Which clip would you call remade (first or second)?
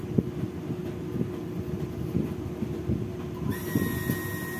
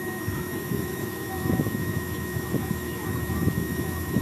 second